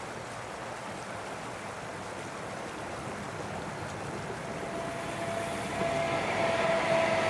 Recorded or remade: recorded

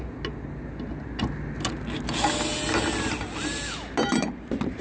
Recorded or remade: recorded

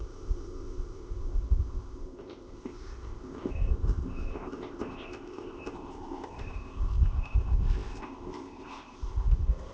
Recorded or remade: remade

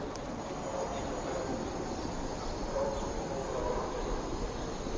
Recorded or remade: recorded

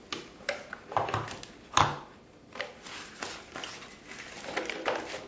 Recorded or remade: recorded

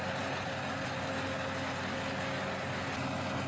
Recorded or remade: recorded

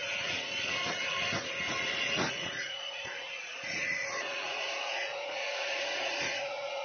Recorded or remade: remade